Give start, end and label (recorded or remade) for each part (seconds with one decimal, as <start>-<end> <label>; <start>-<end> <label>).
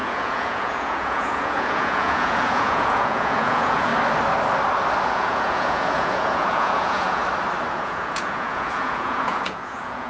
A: 0.0-3.9 remade; 3.9-5.0 recorded; 5.0-7.2 remade; 7.2-7.7 recorded; 7.7-10.1 remade